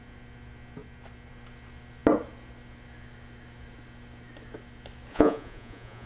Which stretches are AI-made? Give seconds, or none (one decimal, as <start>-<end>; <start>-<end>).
5.1-6.1